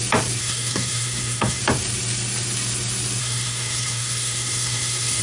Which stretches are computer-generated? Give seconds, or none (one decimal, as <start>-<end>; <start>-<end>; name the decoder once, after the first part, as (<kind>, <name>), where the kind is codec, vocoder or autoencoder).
0.4-1.6 (codec, SNAC); 3.2-5.2